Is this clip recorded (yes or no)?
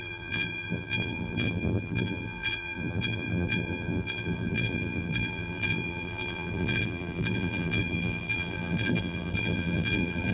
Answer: no